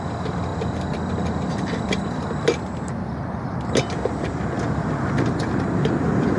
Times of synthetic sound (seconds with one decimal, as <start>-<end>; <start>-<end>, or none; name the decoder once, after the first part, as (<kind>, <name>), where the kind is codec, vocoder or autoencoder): none

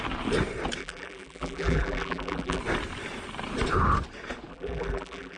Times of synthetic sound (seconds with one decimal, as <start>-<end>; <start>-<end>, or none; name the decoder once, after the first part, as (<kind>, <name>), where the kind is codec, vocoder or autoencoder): 0.8-2.6 (vocoder, BigVGAN v2); 4.5-5.4